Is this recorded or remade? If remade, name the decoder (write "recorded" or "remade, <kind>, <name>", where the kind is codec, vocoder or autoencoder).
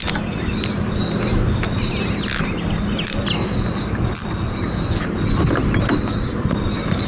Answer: recorded